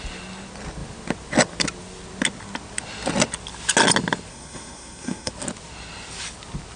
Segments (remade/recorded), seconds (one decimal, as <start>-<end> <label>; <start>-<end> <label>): 0.0-4.3 recorded; 4.3-5.3 remade; 5.3-6.8 recorded